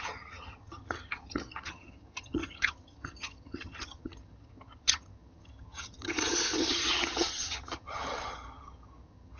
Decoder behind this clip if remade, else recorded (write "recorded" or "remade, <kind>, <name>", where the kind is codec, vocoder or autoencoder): remade, vocoder, HiFi-GAN